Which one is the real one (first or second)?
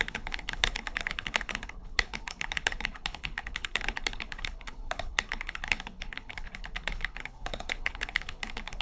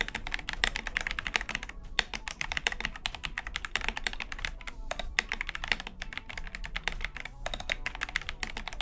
second